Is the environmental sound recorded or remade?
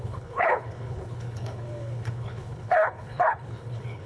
remade